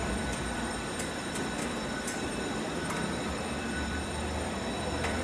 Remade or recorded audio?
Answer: remade